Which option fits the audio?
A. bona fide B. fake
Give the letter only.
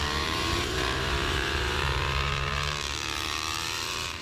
B